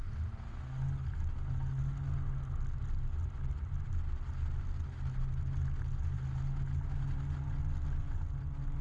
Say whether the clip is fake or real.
real